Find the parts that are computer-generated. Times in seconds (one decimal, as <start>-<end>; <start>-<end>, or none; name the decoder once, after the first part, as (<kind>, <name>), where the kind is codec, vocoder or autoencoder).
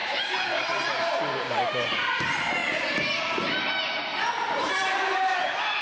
0.0-2.2 (vocoder, BigVGAN v2); 2.6-3.2; 4.1-5.8